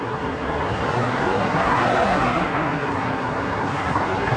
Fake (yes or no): yes